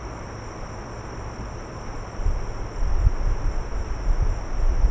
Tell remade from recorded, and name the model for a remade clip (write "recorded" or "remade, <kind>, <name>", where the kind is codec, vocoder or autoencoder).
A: recorded